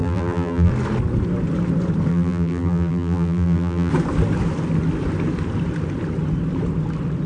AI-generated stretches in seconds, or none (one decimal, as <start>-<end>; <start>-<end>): 0.0-0.7; 2.1-3.9